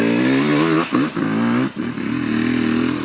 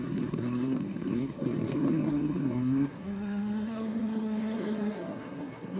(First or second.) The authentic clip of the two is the first